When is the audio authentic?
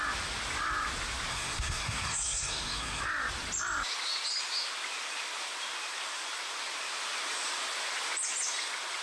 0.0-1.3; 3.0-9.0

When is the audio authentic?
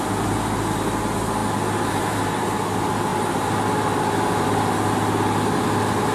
0.0-6.1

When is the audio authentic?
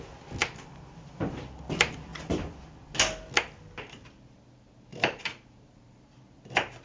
0.0-0.4; 1.2-4.9; 6.2-6.8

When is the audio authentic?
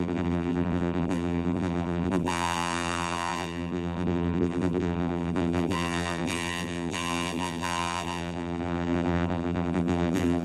none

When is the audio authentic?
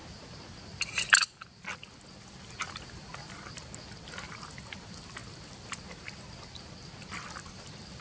0.0-8.0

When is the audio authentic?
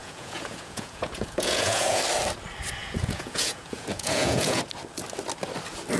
2.0-2.8; 4.6-6.0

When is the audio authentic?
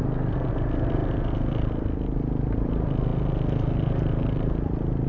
0.0-5.1